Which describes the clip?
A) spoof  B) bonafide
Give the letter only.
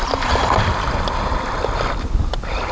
A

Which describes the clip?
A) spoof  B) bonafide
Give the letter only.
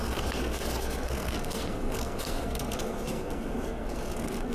A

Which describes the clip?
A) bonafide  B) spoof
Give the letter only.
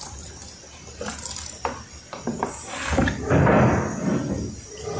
A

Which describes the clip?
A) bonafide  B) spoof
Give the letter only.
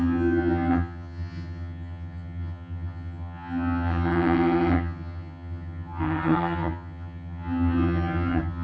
B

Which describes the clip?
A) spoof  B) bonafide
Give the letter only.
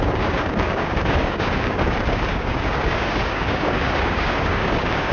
A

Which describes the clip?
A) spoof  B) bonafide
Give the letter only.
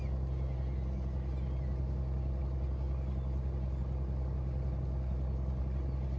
B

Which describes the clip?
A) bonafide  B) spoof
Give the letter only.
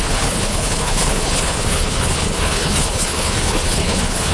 B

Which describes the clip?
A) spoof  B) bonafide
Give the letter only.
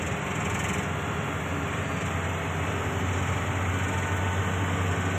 B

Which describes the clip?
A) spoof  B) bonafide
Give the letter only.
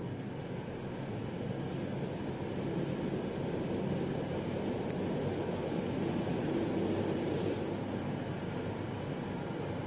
B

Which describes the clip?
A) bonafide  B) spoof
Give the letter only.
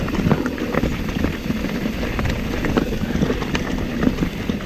A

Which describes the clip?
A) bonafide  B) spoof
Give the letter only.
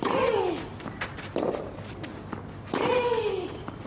A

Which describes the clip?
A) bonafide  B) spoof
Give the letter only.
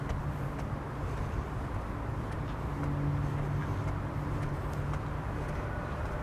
A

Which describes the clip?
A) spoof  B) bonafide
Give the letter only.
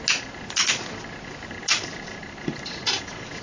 B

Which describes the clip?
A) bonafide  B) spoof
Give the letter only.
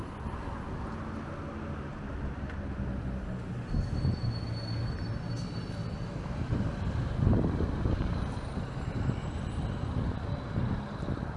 A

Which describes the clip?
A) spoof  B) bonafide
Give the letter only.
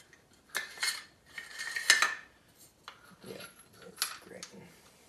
B